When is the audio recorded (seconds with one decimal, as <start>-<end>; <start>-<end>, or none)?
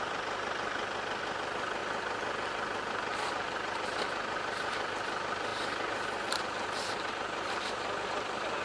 1.8-3.3